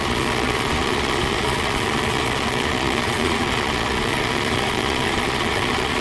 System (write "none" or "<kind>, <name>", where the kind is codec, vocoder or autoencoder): vocoder, Vocos